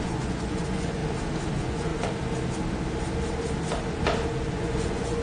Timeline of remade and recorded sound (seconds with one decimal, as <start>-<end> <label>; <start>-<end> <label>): 0.0-1.0 remade; 1.0-1.5 recorded; 1.5-1.9 remade; 1.9-4.5 recorded; 4.5-5.2 remade